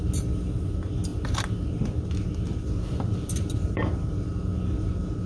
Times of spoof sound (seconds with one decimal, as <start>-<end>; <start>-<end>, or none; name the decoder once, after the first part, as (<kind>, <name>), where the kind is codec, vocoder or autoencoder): 1.1-4.3 (vocoder, BigVGAN v2)